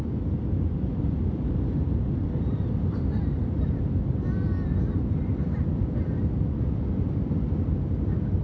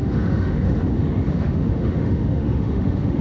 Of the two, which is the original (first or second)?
first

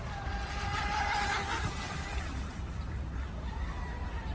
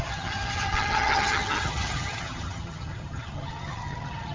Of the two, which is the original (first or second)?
first